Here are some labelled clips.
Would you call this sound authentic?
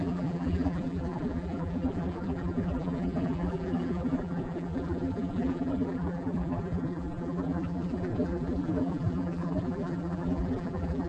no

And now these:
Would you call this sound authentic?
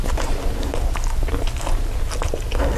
yes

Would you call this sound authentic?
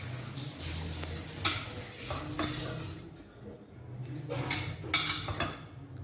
yes